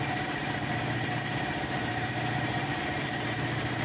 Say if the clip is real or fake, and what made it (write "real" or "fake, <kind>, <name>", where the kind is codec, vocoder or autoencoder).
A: fake, vocoder, BigVGAN v2